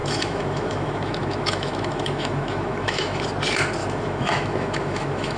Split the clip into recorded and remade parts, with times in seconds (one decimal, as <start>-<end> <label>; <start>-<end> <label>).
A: 0.0-3.2 remade; 3.2-3.8 recorded; 3.8-5.4 remade